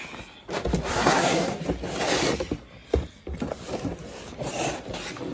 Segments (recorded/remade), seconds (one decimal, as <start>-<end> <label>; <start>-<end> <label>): 0.0-0.9 recorded; 0.9-1.6 remade; 1.6-5.3 recorded